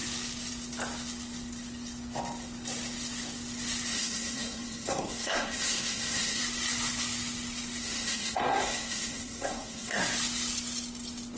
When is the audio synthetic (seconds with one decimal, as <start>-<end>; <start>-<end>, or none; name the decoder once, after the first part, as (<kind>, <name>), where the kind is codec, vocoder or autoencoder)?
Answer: 3.9-6.4 (codec, SNAC); 7.8-10.0